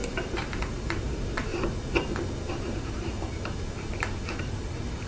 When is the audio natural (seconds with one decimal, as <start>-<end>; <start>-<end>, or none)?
1.5-2.5; 3.1-4.4